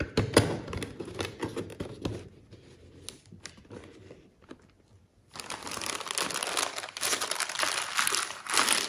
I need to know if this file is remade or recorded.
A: recorded